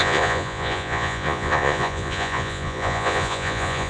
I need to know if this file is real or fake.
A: fake